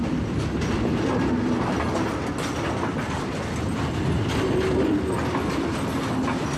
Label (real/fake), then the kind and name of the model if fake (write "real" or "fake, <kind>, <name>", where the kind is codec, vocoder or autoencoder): real